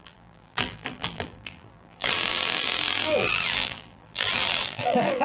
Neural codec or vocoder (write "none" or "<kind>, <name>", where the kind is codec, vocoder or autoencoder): vocoder, BigVGAN v2